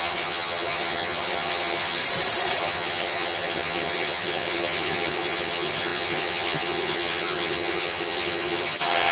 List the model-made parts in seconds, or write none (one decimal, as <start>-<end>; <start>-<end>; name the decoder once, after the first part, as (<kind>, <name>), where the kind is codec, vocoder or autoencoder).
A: 0.0-2.0 (vocoder, HiFi-GAN); 2.6-9.1